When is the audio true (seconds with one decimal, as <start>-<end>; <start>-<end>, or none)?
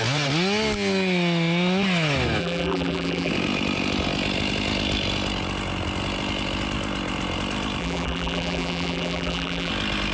0.0-2.4; 3.3-7.8; 9.7-10.1